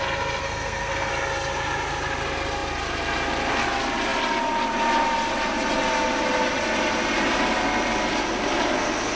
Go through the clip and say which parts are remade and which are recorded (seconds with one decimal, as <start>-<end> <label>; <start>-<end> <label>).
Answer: 0.0-0.4 recorded; 0.4-1.1 remade; 1.1-9.2 recorded